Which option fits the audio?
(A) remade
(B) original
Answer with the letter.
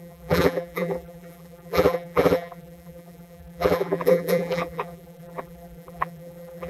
A